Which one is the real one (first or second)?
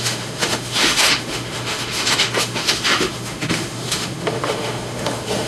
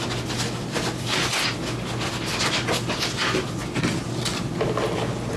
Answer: second